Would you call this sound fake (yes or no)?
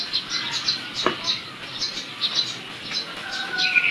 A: no